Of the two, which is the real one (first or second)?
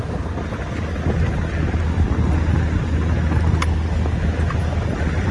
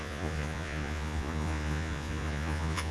first